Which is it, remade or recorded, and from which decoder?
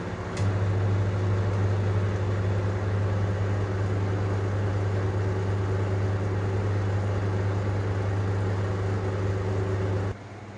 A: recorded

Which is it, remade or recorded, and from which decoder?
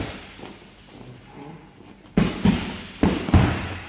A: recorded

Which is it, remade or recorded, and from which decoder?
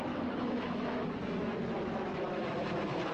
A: remade, autoencoder, DAC-VAE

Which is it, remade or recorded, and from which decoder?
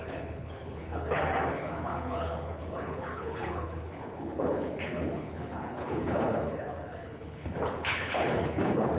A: remade, codec, HILCodec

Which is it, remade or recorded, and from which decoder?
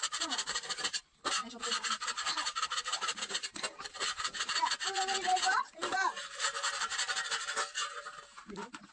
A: remade, vocoder, BigVGAN v2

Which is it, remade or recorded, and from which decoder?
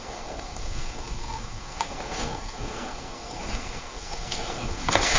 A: remade, codec, SNAC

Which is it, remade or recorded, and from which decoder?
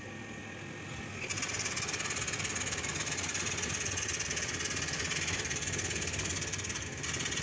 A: recorded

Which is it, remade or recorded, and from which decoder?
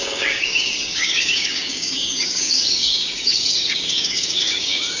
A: remade, codec, DAC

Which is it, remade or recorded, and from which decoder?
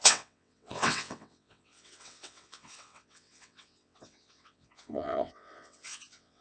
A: remade, vocoder, WaveNeXt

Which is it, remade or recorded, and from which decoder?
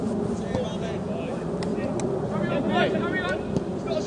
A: recorded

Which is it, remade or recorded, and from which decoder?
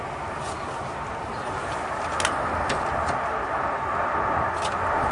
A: recorded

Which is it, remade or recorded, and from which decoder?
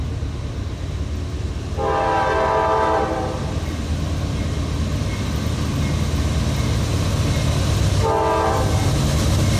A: recorded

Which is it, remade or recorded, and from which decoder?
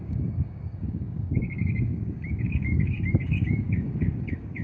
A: remade, codec, DAC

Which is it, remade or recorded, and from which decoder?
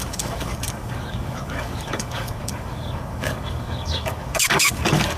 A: remade, codec, DAC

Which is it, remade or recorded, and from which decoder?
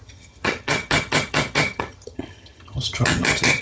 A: remade, vocoder, HiFi-GAN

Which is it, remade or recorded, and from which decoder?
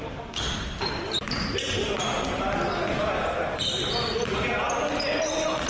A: recorded